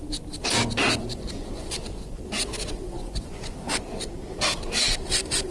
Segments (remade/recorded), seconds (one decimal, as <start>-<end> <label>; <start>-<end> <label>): 0.0-1.1 recorded; 1.1-3.7 remade; 3.7-5.5 recorded

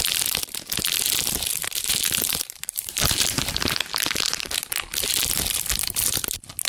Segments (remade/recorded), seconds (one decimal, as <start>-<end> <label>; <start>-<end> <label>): 0.0-2.0 recorded; 2.0-4.7 remade; 4.7-6.7 recorded

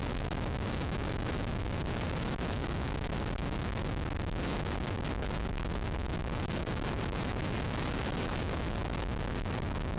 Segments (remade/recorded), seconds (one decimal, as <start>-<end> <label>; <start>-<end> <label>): 0.0-10.0 remade

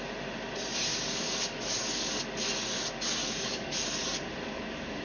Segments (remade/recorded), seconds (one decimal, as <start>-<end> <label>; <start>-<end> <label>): 0.0-0.9 recorded; 0.9-2.2 remade; 2.2-3.2 recorded; 3.2-3.8 remade; 3.8-5.0 recorded

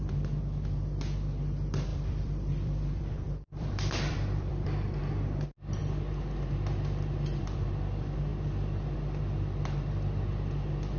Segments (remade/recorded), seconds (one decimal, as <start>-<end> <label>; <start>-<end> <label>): 0.0-1.9 recorded; 1.9-5.0 remade; 5.0-11.0 recorded

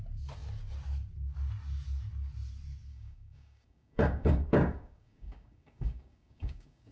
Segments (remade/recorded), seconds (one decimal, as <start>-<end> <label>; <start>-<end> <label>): 0.0-2.9 recorded; 2.9-6.9 remade

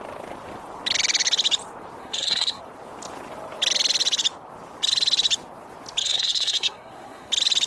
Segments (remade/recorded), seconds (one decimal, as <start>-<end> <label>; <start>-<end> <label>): 0.0-2.0 recorded; 2.0-2.6 remade; 2.6-6.0 recorded; 6.0-7.3 remade; 7.3-7.7 recorded